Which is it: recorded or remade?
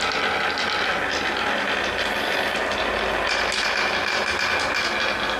recorded